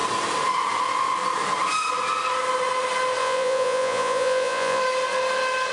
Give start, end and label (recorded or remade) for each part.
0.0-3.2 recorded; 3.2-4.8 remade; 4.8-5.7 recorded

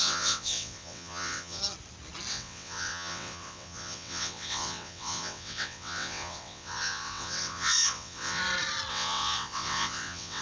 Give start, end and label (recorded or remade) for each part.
0.0-1.6 remade; 1.6-2.3 recorded; 2.3-8.4 remade; 8.4-8.9 recorded; 8.9-10.4 remade

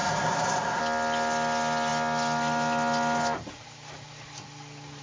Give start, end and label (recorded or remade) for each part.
0.0-0.8 remade; 0.8-5.0 recorded

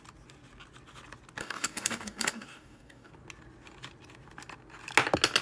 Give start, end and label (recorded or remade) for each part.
0.0-1.4 recorded; 1.4-3.1 remade; 3.1-5.4 recorded

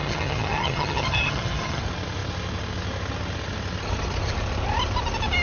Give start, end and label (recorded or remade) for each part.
0.0-1.8 remade; 1.8-5.4 recorded

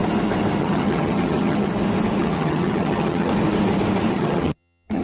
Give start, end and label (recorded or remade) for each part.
0.0-0.6 recorded; 0.6-1.7 remade; 1.7-2.2 recorded; 2.2-3.3 remade; 3.3-4.1 recorded; 4.1-5.0 remade

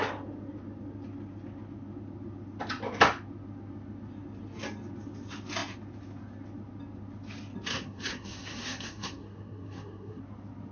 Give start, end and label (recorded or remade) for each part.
0.0-7.7 recorded; 7.7-10.2 remade; 10.2-10.7 recorded